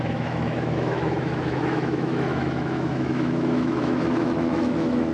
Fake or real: fake